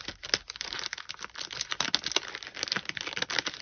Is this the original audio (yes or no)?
yes